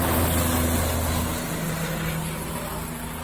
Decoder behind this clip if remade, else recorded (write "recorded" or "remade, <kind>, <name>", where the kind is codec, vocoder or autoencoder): recorded